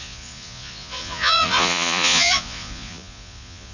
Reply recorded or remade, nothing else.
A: remade